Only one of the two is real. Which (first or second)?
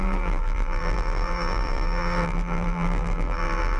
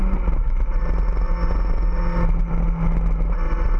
second